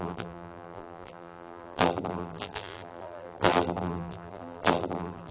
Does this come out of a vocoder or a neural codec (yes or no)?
yes